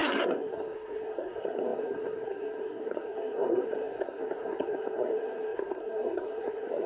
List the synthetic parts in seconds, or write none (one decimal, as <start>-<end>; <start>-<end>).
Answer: 0.0-6.9